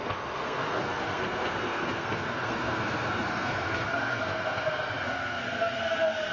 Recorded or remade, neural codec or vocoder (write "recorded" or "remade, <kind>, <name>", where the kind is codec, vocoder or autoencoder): remade, codec, SNAC